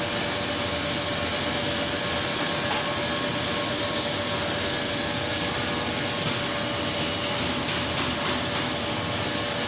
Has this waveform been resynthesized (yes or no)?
no